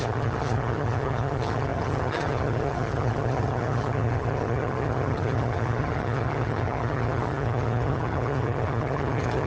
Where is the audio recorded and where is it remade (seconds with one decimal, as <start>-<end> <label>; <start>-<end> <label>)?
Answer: 0.0-9.5 remade